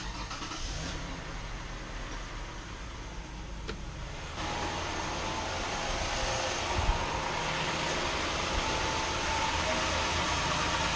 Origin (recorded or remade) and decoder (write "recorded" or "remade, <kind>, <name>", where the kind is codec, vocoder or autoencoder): recorded